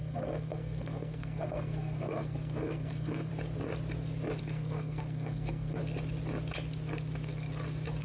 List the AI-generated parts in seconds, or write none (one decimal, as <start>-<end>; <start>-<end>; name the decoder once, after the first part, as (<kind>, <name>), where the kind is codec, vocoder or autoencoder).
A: 0.0-3.3 (codec, SNAC); 4.4-5.8